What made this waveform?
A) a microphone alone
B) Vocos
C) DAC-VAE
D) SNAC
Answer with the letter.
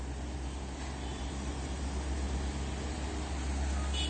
A